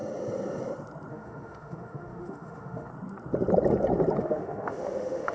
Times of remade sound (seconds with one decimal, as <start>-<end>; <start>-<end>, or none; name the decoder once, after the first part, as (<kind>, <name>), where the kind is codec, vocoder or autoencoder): 1.1-2.9 (autoencoder, DAC-VAE); 4.2-5.3